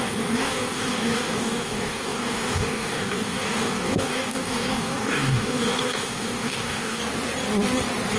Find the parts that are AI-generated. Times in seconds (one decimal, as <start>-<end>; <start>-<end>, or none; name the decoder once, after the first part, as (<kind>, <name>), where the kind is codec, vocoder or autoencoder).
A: 0.0-7.0 (codec, DAC)

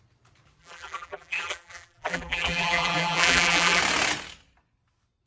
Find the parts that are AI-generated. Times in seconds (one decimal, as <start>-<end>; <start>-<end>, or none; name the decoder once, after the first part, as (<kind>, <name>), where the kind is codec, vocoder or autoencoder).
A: 0.6-3.8 (vocoder, BigVGAN v2)

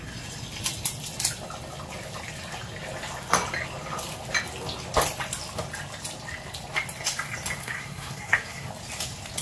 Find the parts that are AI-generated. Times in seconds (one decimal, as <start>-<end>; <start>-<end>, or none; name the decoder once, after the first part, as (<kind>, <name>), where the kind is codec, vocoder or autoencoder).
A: 7.6-8.7 (codec, SNAC)

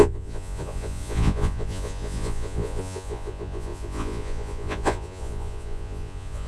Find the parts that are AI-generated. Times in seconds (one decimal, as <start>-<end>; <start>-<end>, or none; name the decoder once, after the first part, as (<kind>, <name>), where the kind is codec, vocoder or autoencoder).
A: 0.0-6.5 (vocoder, Vocos)